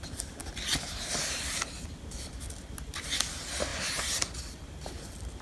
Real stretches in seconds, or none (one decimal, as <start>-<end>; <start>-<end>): 0.0-3.7; 4.3-5.4